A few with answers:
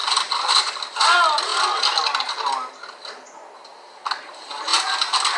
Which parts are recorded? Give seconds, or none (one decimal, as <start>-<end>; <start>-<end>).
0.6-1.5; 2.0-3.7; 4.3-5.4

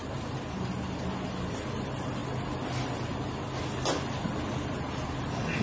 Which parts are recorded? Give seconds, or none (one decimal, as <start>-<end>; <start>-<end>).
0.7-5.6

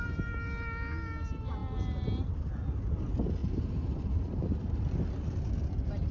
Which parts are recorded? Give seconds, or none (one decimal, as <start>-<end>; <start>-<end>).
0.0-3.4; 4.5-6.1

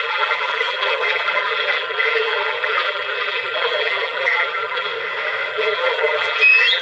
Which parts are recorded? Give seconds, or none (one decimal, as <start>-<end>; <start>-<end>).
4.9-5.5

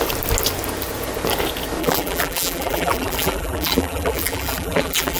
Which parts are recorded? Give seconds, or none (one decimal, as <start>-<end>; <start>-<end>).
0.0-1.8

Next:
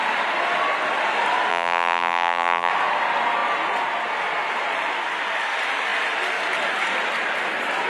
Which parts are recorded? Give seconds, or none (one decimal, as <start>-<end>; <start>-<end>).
0.0-1.5; 2.7-7.9

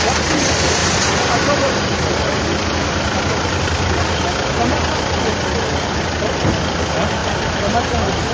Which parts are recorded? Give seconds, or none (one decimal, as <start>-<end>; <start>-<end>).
0.0-0.8; 3.9-7.2